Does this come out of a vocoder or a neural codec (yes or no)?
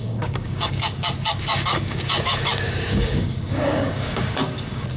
yes